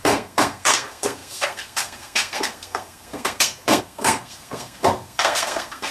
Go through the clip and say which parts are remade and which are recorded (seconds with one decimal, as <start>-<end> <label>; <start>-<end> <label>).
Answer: 0.0-5.9 remade